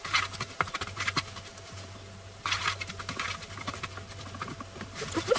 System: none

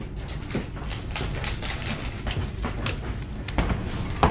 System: none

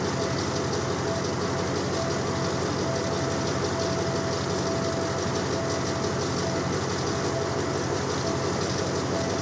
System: none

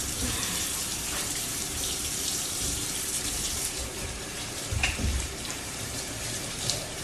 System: vocoder, BigVGAN v2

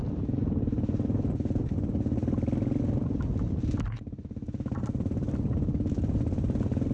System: none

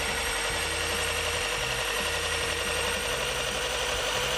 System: none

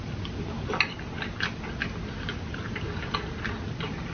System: none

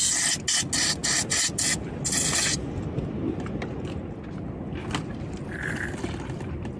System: none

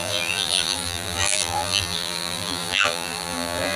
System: vocoder, BigVGAN v2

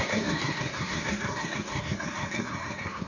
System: codec, SNAC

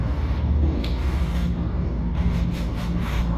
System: codec, DAC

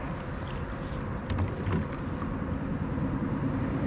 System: none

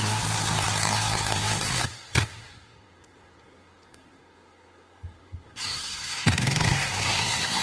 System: codec, SNAC